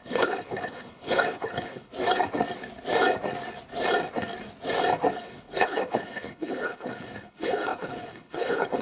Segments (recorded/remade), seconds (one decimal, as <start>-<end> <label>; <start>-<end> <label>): 0.0-1.9 remade; 1.9-5.1 recorded; 5.1-8.8 remade